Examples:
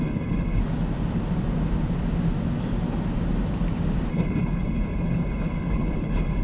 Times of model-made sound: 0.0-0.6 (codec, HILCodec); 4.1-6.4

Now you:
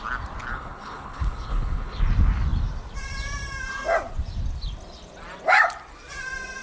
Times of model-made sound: 0.5-2.0 (codec, HILCodec)

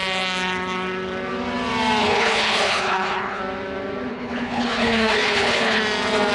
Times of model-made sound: 2.0-3.4 (codec, HILCodec); 4.1-5.8

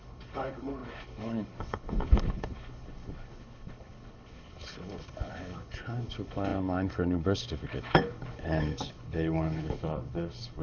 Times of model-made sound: 0.0-10.6 (codec, HILCodec)

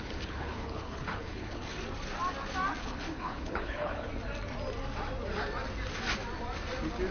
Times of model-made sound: 0.0-1.7 (codec, HILCodec); 2.8-4.1

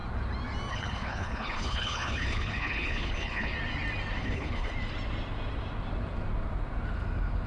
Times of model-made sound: 0.7-3.5 (codec, HILCodec); 4.2-4.7

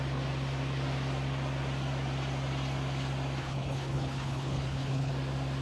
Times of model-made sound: 3.4-5.1 (codec, HILCodec)

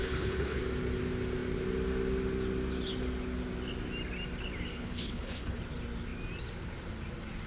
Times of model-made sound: 0.0-0.6 (codec, HILCodec); 4.7-5.6